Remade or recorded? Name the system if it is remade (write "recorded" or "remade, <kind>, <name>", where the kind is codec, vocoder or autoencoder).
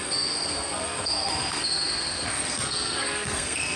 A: remade, codec, SNAC